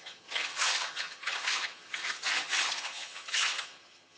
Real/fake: fake